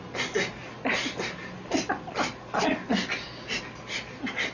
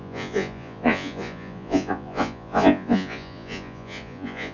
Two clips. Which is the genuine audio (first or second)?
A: first